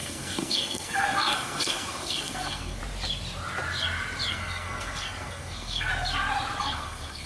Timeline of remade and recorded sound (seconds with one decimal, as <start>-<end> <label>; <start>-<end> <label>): 0.0-2.8 remade; 2.8-4.3 recorded; 4.3-5.9 remade; 5.9-6.6 recorded; 6.6-7.3 remade